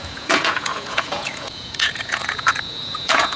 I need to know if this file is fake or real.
fake